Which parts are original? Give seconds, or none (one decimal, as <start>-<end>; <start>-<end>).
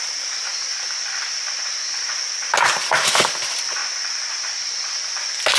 0.0-5.6